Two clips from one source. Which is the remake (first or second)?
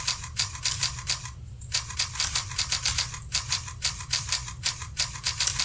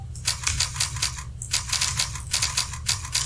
first